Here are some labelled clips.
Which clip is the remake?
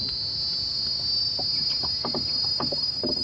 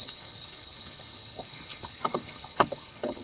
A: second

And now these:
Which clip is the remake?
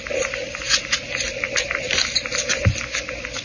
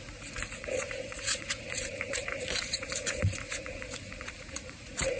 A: second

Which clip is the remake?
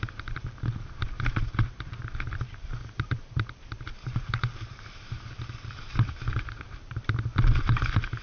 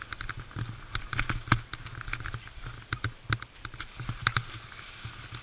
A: first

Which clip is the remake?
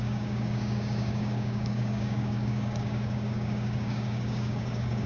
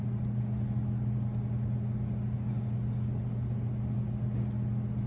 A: first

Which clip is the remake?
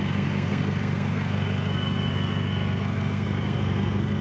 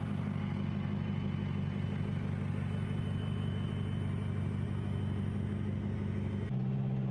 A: first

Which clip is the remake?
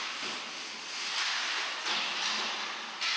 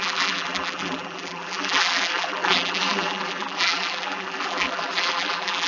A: second